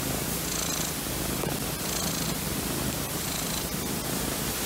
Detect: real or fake real